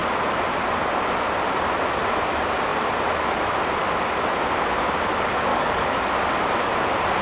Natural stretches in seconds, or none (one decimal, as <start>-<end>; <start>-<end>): 0.0-5.5; 6.0-7.2